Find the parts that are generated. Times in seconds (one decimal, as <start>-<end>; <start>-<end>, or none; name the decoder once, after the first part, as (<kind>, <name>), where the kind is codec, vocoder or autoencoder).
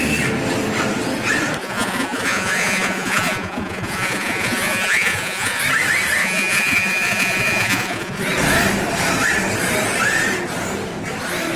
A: 1.6-5.6 (vocoder, Vocos); 6.2-8.2